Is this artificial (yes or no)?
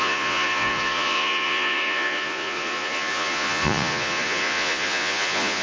yes